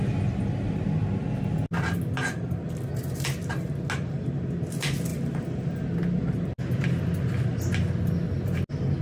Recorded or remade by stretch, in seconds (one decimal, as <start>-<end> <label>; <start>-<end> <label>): 0.0-9.0 recorded